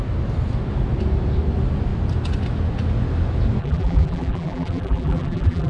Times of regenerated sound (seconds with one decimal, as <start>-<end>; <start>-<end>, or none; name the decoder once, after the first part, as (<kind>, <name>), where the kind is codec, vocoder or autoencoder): 3.6-5.7 (vocoder, BigVGAN v2)